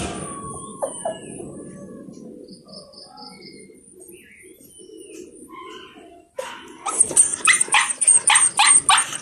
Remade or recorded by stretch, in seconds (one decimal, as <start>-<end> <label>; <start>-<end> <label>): 0.0-0.7 recorded; 0.7-1.4 remade; 1.4-7.3 recorded; 7.3-8.7 remade; 8.7-9.2 recorded